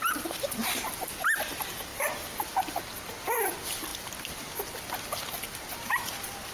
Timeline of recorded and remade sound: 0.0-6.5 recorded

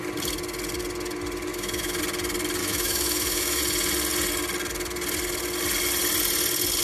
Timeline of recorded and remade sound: 0.0-1.5 recorded; 1.5-2.0 remade; 2.0-2.6 recorded; 2.6-3.6 remade; 3.6-6.8 recorded

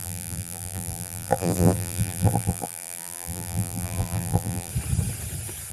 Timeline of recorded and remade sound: 0.0-4.7 remade; 4.7-5.7 recorded

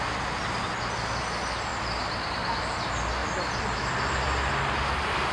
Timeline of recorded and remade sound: 0.0-1.7 recorded; 1.7-2.6 remade; 2.6-3.2 recorded; 3.2-4.5 remade; 4.5-5.3 recorded

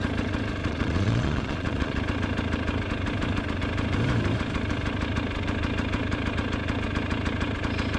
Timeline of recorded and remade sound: 0.0-0.6 recorded; 0.6-2.0 remade; 2.0-8.0 recorded